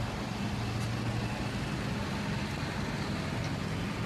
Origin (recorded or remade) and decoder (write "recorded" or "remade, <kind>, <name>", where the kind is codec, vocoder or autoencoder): recorded